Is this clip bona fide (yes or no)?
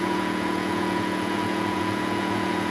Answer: no